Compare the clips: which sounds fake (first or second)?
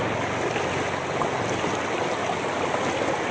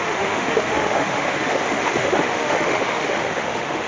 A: second